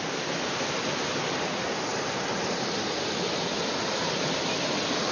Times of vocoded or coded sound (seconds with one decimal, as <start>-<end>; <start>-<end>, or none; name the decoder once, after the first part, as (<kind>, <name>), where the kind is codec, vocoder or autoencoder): none